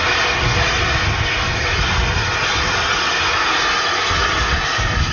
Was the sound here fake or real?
real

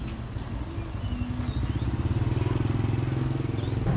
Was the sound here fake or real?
real